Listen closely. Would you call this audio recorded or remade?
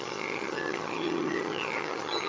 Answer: remade